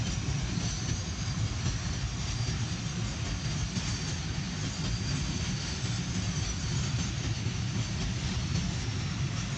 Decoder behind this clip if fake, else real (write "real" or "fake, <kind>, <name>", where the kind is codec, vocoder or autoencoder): real